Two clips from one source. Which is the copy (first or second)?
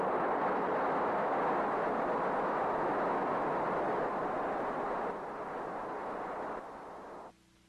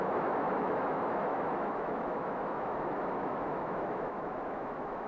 second